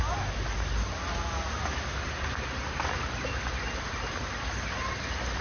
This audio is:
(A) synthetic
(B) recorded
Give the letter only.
B